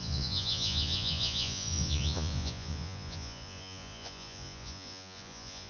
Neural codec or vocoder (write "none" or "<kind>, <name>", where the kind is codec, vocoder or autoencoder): vocoder, Vocos